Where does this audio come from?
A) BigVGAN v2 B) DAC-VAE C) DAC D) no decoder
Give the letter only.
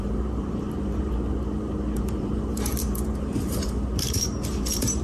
A